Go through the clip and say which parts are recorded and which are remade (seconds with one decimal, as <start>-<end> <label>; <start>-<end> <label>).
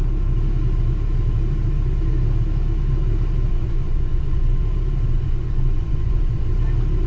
0.0-3.5 recorded; 3.5-4.6 remade; 4.6-5.1 recorded; 5.1-6.5 remade; 6.5-7.1 recorded